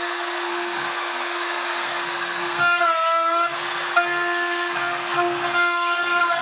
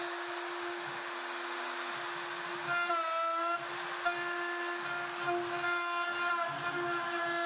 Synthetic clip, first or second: first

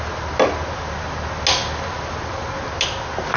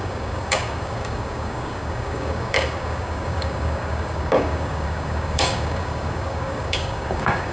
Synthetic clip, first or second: second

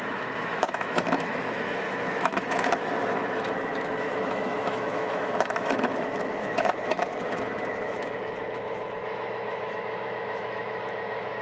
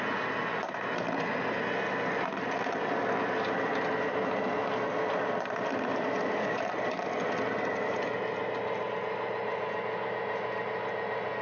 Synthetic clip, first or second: first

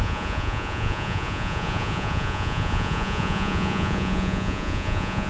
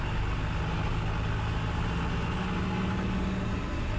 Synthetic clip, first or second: first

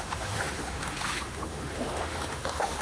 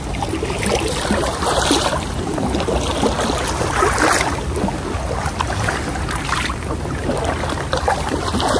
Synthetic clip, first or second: first